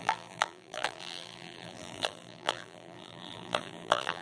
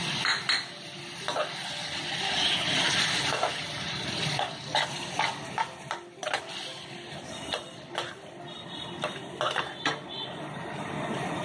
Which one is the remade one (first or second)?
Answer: first